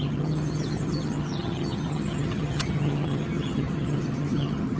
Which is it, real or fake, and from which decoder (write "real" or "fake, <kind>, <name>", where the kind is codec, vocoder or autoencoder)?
fake, vocoder, HiFi-GAN